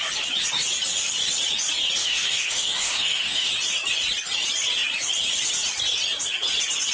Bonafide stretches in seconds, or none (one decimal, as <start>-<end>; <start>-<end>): 0.0-2.0; 3.5-6.9